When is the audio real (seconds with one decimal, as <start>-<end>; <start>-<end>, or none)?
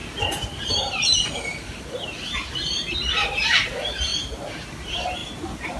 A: 0.0-0.7; 2.4-3.3; 4.1-4.7